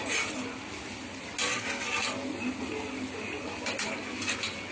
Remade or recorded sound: recorded